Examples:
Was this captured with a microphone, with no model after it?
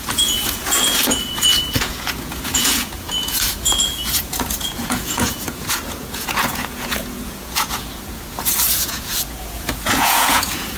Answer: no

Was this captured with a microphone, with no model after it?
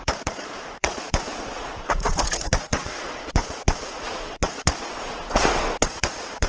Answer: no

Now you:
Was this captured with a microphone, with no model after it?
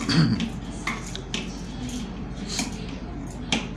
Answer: yes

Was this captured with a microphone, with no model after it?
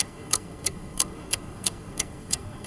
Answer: no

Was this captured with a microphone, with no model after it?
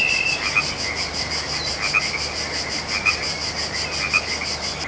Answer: yes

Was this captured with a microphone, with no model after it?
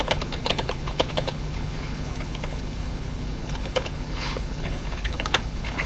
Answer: no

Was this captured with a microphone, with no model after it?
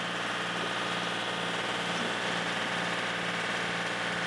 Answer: yes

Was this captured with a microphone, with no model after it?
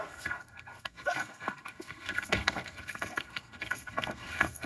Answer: no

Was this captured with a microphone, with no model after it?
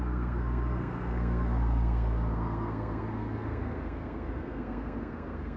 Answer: no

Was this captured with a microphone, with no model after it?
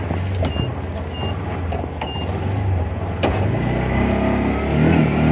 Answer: yes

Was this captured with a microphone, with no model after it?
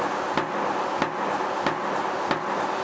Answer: yes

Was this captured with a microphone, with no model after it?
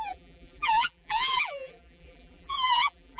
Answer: no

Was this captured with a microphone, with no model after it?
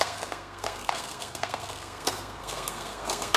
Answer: no